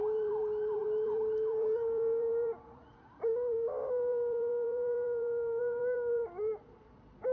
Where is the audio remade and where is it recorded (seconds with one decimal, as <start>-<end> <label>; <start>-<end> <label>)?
0.0-7.3 remade